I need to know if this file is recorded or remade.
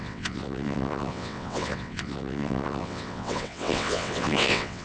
remade